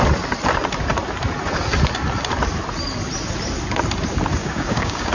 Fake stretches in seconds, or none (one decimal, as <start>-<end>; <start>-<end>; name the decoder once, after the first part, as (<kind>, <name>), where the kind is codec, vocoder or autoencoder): 4.4-5.1 (codec, DAC)

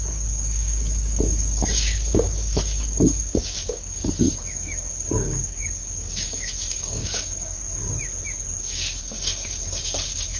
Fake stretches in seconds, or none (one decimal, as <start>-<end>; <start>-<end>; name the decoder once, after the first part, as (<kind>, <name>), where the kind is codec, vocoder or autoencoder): 0.0-7.6 (codec, DAC); 8.6-10.4

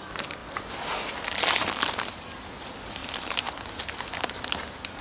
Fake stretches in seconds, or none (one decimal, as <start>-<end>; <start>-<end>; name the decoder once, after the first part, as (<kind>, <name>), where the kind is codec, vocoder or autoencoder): none

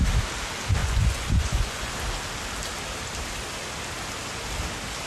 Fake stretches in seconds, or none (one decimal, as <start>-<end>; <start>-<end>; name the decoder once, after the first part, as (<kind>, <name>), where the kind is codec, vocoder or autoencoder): 0.8-1.9 (vocoder, Vocos)

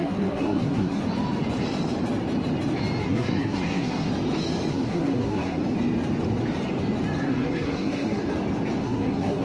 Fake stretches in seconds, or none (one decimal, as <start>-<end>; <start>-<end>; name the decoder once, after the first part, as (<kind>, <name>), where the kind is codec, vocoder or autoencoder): 0.0-1.0 (codec, SNAC); 3.0-4.1; 4.7-5.6; 7.2-8.2; 8.8-9.4

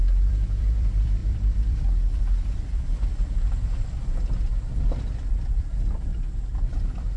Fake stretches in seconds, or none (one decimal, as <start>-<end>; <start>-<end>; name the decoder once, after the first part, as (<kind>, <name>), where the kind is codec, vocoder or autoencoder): 0.0-7.2 (vocoder, BigVGAN v2)

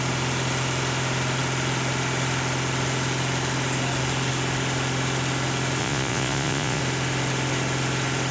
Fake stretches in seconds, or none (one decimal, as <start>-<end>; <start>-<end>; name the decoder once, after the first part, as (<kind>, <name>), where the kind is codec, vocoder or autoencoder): 5.8-6.8 (vocoder, Vocos)